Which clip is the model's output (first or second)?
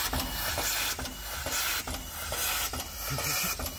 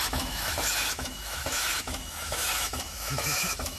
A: second